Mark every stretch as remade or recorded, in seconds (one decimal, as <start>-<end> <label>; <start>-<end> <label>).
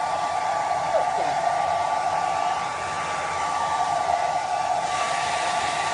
0.0-2.7 remade; 2.7-3.3 recorded; 3.3-5.9 remade